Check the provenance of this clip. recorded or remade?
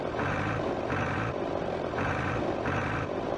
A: recorded